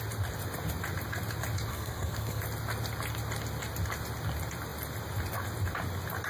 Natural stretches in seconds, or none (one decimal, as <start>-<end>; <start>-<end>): 0.0-1.7; 2.4-6.3